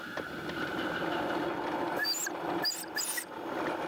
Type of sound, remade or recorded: recorded